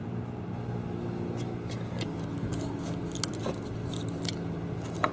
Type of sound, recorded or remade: recorded